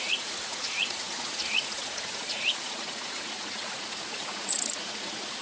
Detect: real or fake fake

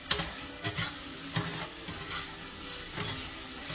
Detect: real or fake real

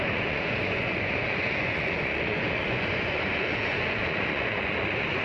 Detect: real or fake fake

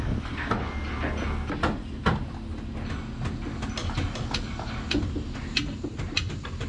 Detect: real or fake real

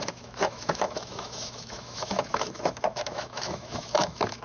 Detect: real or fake fake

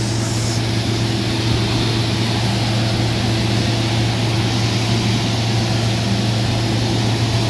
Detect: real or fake real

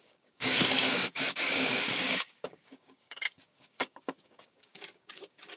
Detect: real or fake fake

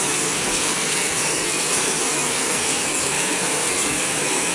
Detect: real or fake fake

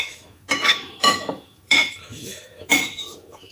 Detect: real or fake fake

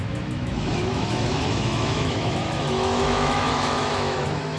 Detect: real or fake fake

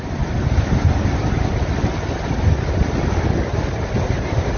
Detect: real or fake real